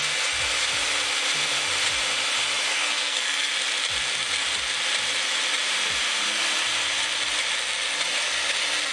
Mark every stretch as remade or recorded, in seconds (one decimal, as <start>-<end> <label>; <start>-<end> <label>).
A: 0.0-2.7 recorded; 2.7-3.5 remade; 3.5-8.9 recorded